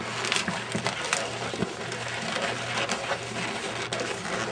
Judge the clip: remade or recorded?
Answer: recorded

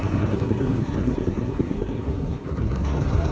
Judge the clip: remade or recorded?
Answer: remade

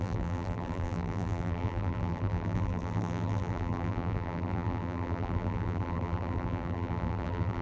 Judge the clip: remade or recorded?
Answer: remade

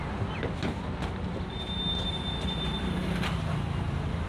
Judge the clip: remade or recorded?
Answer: recorded